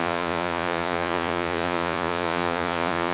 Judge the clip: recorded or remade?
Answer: remade